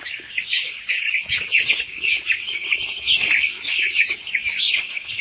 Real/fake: fake